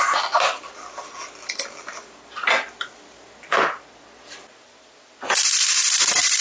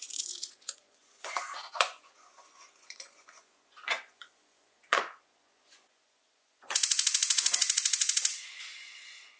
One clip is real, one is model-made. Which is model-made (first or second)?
second